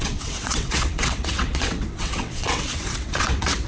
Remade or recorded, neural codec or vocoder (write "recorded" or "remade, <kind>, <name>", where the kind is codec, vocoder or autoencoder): remade, vocoder, WaveNeXt